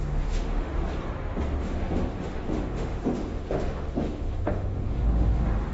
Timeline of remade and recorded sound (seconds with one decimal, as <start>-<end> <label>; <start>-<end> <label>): 0.0-0.7 remade; 0.7-1.6 recorded; 1.6-5.7 remade